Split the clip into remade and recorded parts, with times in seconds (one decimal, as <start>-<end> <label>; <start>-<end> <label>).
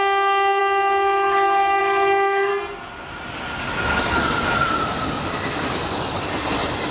0.0-2.5 remade; 2.5-6.9 recorded